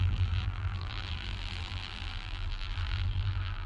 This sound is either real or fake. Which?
fake